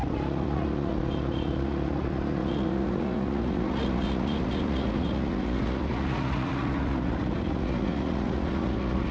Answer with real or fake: fake